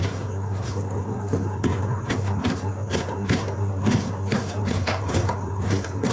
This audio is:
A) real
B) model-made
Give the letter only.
B